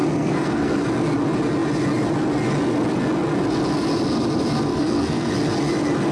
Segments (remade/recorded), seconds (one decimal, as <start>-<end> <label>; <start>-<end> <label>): 0.0-0.8 remade; 0.8-4.7 recorded; 4.7-5.3 remade; 5.3-6.1 recorded